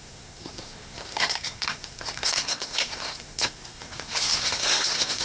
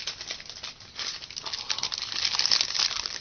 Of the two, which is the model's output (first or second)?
first